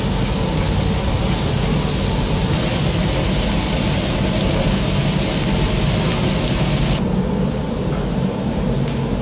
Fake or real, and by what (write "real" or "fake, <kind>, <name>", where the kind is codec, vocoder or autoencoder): real